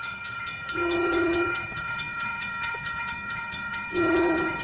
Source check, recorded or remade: remade